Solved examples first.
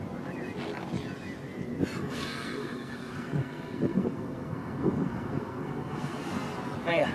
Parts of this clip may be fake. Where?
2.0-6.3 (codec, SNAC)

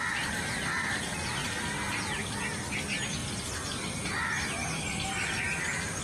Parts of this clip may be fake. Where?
none

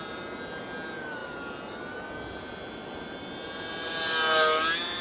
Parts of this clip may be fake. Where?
none

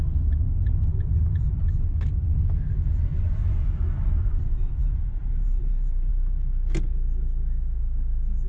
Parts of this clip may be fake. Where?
4.8-6.1 (vocoder, Vocos)

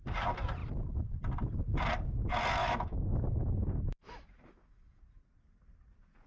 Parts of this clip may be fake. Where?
2.6-5.0 (autoencoder, DAC-VAE)

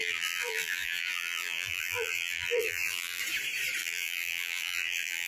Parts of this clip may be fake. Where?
0.0-3.2 (vocoder, BigVGAN v2); 3.8-5.3

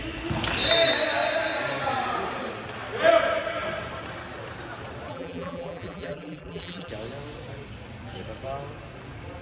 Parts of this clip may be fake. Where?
5.1-6.9 (vocoder, BigVGAN v2)

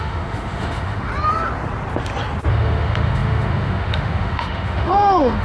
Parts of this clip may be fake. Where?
0.0-1.1 (autoencoder, DAC-VAE); 2.5-5.4